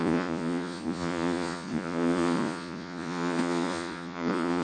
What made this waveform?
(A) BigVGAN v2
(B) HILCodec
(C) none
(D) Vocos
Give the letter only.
D